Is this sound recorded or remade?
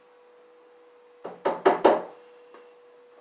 recorded